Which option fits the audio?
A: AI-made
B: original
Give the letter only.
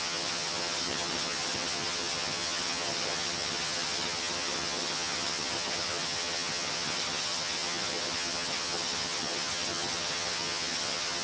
A